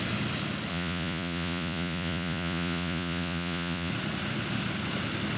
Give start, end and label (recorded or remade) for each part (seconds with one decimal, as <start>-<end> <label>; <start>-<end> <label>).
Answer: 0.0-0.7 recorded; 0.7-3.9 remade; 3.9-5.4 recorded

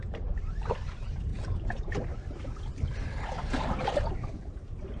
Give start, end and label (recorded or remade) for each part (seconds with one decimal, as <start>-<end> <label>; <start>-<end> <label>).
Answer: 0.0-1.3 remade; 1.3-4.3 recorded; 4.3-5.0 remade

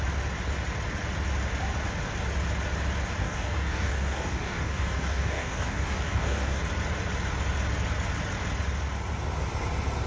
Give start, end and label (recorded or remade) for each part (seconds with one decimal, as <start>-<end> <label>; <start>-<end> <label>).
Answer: 0.0-3.2 recorded; 3.2-6.6 remade; 6.6-10.1 recorded

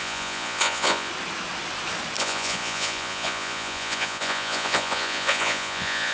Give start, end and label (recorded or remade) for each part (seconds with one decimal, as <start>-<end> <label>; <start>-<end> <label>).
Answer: 0.0-1.1 remade; 1.1-2.2 recorded; 2.2-6.1 remade

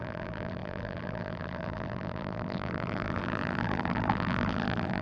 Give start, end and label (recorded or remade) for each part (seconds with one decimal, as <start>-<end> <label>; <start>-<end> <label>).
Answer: 0.0-5.0 remade

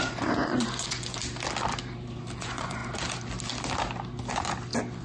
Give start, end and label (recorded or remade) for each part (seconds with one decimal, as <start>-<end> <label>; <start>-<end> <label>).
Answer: 0.0-1.2 remade; 1.2-2.4 recorded; 2.4-2.8 remade; 2.8-5.0 recorded

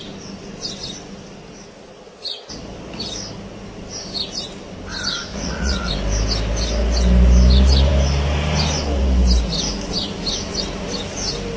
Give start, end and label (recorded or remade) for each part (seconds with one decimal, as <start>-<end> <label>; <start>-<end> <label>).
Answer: 0.0-5.3 recorded; 5.3-5.9 remade; 5.9-11.6 recorded